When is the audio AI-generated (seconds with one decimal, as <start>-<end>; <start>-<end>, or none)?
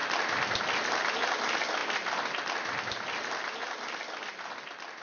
none